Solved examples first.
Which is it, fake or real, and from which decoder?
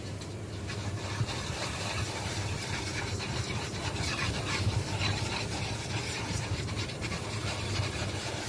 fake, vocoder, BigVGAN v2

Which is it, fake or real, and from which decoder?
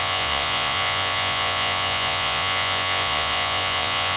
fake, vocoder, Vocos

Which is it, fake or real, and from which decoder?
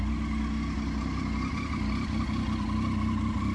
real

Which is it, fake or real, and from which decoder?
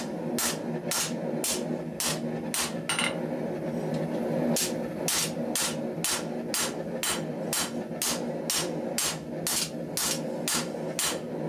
real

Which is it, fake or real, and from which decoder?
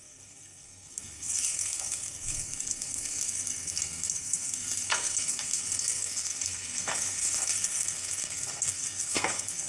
fake, codec, SNAC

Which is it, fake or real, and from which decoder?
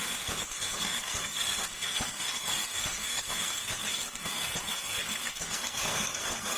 fake, codec, SNAC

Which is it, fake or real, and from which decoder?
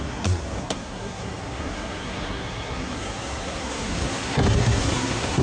fake, codec, SNAC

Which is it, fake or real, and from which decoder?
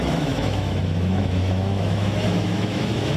fake, autoencoder, DAC-VAE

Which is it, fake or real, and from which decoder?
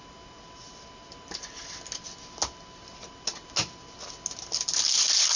real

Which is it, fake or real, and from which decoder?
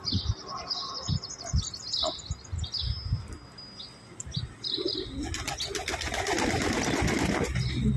real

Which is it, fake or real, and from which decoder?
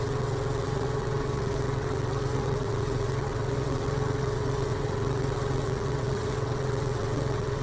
fake, vocoder, WaveNeXt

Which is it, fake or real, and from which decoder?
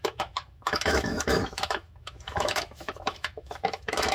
fake, autoencoder, DAC-VAE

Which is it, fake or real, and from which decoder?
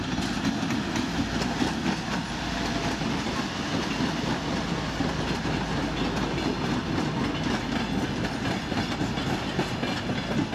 real